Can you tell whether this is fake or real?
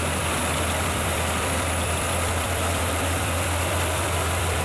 fake